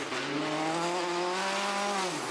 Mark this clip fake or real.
real